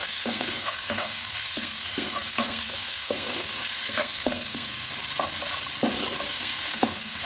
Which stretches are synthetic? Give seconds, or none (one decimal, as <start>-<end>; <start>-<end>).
0.0-4.9; 6.3-7.3